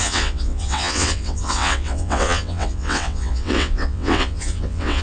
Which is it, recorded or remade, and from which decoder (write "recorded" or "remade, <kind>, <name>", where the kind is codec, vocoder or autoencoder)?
remade, vocoder, WaveNeXt